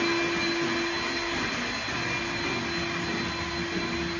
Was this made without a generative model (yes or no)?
yes